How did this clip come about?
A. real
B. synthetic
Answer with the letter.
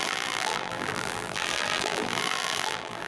B